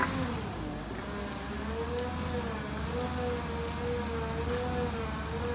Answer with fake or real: real